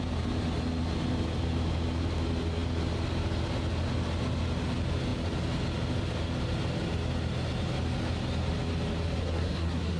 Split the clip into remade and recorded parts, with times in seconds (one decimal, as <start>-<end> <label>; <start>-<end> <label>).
0.0-9.2 recorded; 9.2-10.0 remade